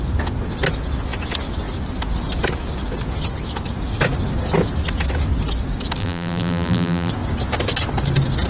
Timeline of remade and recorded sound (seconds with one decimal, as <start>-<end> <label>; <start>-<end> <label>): 0.0-6.0 recorded; 6.0-7.1 remade; 7.1-8.5 recorded